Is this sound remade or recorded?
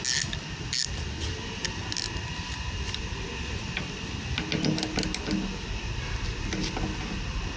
recorded